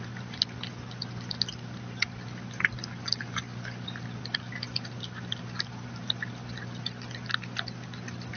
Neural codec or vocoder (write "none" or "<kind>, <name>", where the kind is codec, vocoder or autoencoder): none